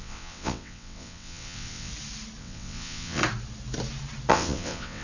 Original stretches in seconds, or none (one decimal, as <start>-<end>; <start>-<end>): 1.9-2.4; 3.2-4.3